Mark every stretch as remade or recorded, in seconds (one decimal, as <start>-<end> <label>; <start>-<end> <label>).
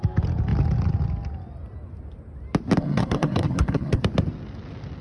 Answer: 0.0-2.8 recorded; 2.8-4.0 remade; 4.0-5.0 recorded